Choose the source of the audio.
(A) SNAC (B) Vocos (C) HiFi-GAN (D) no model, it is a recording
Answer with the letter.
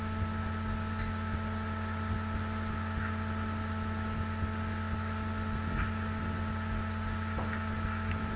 D